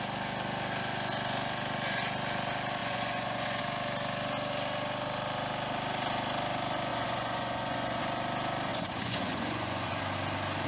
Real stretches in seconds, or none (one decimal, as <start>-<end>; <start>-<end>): 0.0-2.8; 3.6-6.9; 8.0-8.7; 10.0-10.7